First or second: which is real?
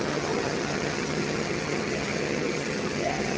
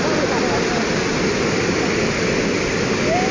second